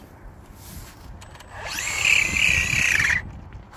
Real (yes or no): yes